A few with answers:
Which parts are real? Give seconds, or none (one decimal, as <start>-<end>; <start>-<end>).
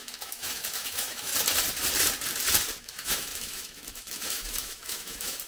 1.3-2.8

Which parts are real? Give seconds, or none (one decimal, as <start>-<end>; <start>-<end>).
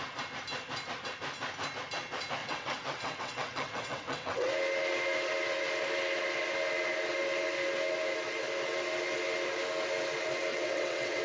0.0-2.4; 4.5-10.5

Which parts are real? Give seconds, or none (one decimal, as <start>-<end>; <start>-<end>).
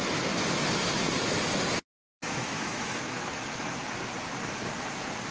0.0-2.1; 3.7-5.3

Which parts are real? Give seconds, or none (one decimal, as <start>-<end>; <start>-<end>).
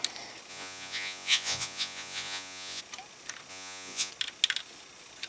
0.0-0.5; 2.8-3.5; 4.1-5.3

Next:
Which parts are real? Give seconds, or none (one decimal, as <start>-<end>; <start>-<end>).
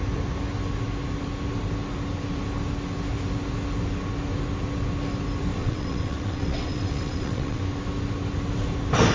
0.0-5.6; 7.6-9.1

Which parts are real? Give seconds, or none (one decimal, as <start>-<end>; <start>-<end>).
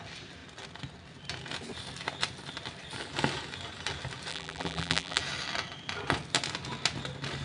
0.0-4.3; 5.2-7.4